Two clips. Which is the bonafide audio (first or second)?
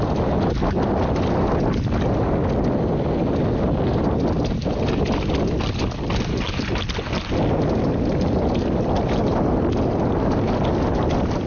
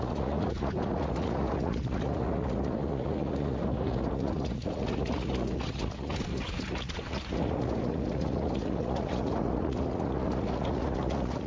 first